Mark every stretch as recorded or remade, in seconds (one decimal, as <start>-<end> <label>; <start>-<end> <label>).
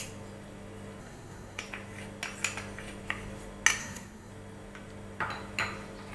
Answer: 0.0-1.0 recorded; 1.0-1.6 remade; 1.6-3.8 recorded; 3.8-4.3 remade; 4.3-6.1 recorded